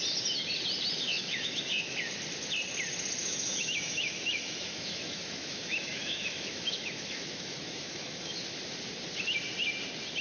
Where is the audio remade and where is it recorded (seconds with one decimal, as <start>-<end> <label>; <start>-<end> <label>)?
0.0-1.1 recorded; 1.1-2.0 remade; 2.0-3.2 recorded; 3.2-8.4 remade; 8.4-10.2 recorded